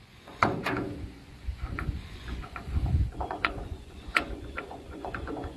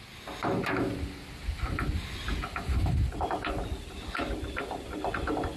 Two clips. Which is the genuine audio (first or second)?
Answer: second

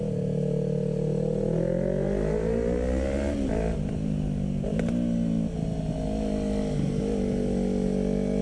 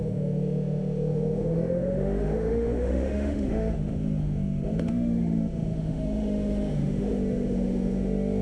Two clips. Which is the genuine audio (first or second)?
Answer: first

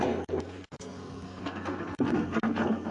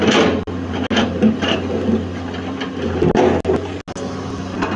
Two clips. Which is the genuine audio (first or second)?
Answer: second